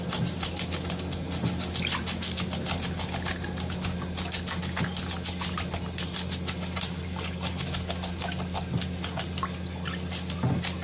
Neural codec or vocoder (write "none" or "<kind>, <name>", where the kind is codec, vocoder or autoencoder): none